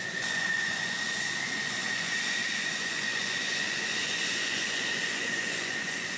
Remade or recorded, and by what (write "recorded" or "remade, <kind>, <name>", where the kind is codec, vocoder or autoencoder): remade, vocoder, Vocos